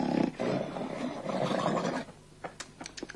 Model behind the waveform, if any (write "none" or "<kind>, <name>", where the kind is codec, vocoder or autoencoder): none